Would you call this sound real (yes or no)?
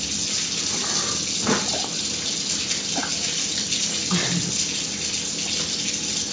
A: yes